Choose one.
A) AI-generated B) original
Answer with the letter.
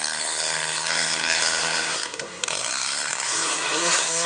A